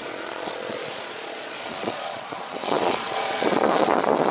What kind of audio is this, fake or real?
fake